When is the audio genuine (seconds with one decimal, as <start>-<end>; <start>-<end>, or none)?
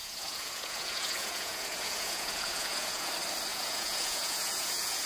3.1-3.5